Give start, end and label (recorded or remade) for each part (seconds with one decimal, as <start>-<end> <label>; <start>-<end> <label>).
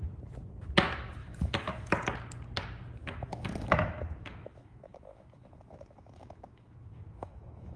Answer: 0.0-1.2 recorded; 1.2-1.9 remade; 1.9-3.0 recorded; 3.0-7.8 remade